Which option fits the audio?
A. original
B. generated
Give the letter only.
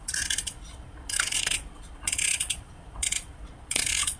B